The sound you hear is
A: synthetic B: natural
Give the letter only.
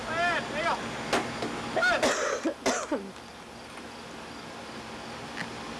B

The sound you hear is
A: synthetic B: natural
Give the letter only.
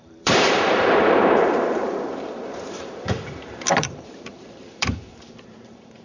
A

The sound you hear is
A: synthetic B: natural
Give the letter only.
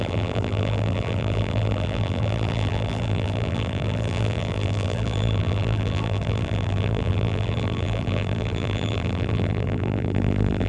A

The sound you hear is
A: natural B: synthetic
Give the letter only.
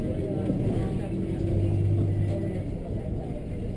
A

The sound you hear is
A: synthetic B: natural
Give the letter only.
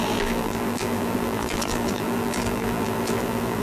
A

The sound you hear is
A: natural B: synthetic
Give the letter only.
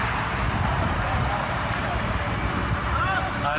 B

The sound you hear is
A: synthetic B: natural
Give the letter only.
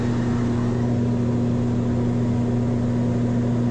B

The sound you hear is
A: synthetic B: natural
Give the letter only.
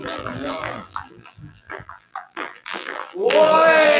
A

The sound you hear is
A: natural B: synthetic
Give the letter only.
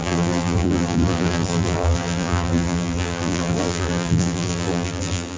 B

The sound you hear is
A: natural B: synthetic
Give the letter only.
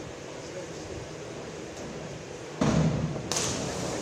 A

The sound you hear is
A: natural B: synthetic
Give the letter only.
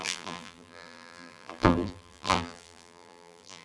B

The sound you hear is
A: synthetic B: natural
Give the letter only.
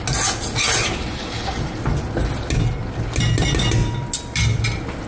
B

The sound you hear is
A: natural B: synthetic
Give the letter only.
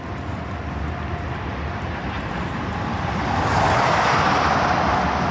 A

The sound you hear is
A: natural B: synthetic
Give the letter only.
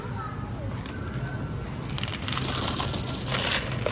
A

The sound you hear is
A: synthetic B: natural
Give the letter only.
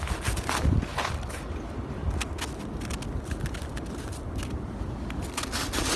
B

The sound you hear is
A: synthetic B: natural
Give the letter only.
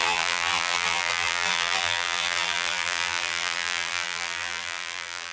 A